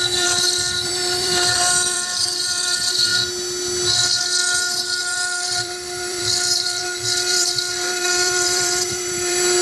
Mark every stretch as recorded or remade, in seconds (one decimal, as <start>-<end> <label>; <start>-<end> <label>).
0.0-3.1 remade; 3.1-5.0 recorded; 5.0-9.6 remade